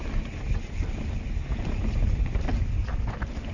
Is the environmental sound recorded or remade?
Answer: recorded